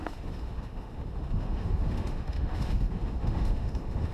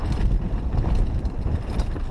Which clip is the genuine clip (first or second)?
second